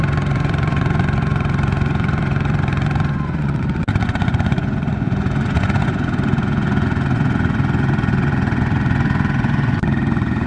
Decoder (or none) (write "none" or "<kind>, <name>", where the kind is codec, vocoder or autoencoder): vocoder, Vocos